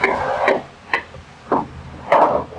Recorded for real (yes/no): yes